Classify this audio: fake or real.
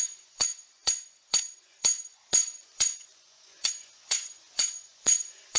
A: fake